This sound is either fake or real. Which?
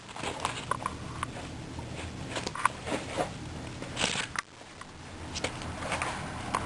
real